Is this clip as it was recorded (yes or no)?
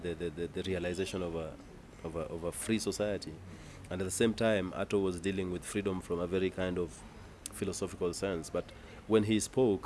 yes